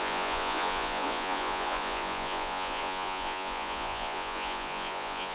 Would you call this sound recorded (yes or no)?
no